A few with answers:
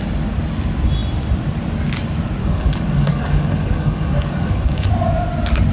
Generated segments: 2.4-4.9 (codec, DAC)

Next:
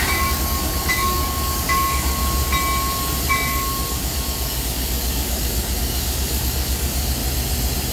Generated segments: 0.0-2.2 (codec, DAC); 3.3-7.2

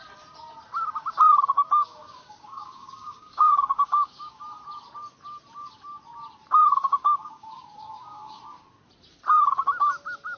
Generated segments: 1.8-4.4 (codec, DAC); 6.7-8.4

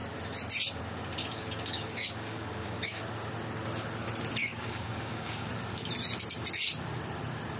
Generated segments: 1.3-3.0 (codec, DAC); 4.4-5.5

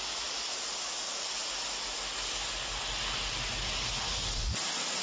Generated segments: none

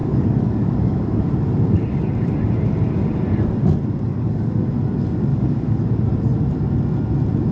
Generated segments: 0.0-1.3 (codec, DAC); 4.1-4.7; 5.3-5.8